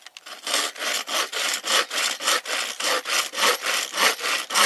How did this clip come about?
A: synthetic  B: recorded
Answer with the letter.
B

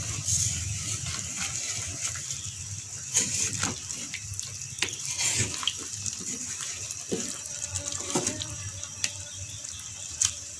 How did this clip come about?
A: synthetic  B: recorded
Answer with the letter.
A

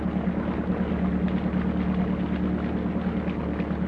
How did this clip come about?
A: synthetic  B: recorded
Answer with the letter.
B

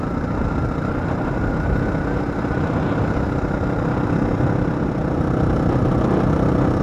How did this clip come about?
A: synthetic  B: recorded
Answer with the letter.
B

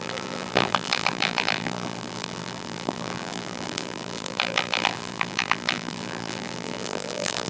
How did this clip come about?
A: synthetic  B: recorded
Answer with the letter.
A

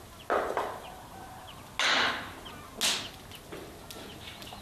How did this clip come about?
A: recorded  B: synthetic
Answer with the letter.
A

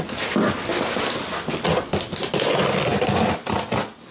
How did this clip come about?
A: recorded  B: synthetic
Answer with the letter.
A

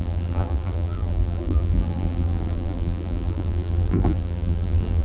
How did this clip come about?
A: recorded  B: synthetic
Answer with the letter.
B